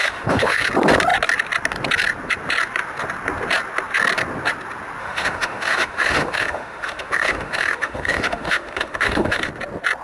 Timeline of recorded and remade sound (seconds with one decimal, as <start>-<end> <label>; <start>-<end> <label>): 0.0-0.7 remade; 0.7-5.0 recorded; 5.0-9.5 remade; 9.5-10.0 recorded